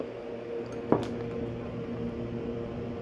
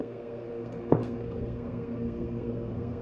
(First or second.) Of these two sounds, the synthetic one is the second